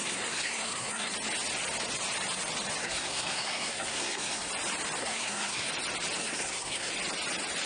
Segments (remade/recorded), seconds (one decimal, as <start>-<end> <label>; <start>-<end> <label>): 0.0-1.1 remade; 1.1-2.8 recorded; 2.8-4.5 remade; 4.5-5.0 recorded; 5.0-5.7 remade; 5.7-6.2 recorded; 6.2-6.9 remade; 6.9-7.7 recorded